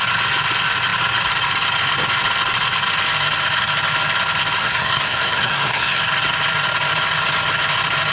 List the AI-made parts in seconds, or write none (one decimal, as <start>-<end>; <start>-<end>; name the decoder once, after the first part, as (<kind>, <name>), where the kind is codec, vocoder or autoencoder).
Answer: 4.6-6.0 (codec, SNAC)